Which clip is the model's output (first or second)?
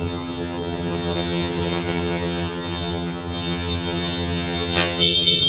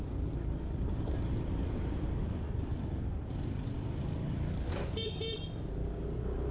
first